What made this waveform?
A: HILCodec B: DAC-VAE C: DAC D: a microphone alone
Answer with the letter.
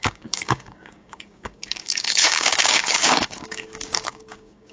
C